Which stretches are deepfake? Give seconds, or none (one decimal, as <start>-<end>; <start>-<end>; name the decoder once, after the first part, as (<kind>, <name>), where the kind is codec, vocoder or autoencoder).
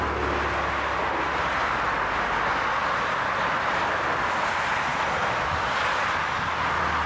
none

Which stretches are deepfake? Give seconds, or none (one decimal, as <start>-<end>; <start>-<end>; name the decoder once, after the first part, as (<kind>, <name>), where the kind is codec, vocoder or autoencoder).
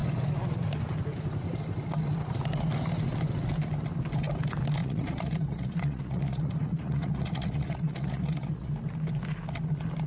4.8-8.7 (vocoder, Vocos)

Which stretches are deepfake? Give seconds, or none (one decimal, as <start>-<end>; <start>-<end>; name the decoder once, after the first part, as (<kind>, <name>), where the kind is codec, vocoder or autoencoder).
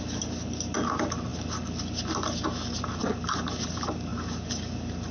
none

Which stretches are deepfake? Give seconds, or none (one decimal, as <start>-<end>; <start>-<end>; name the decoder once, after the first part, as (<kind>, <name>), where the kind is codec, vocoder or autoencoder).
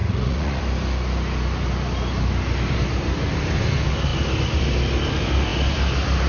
0.0-0.6 (vocoder, Vocos)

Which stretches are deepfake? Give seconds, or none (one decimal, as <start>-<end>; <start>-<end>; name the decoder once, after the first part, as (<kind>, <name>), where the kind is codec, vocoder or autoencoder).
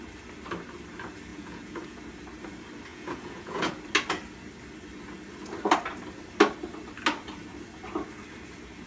1.3-2.0 (vocoder, Vocos); 2.9-3.7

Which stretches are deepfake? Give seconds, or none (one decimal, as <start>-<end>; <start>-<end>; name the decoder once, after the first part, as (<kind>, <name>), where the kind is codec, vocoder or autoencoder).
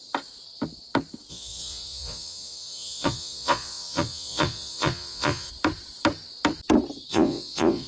1.3-5.5 (vocoder, Vocos); 7.1-7.9